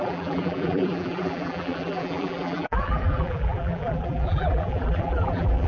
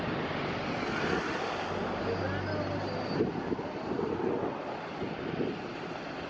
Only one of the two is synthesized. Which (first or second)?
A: first